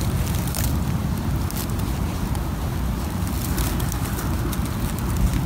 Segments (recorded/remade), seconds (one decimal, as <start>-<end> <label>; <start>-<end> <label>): 0.0-5.5 recorded